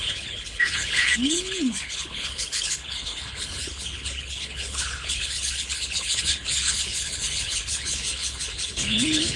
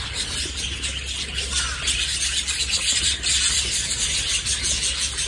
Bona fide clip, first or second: second